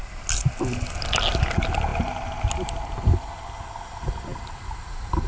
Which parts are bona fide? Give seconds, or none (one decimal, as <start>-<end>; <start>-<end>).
0.0-5.3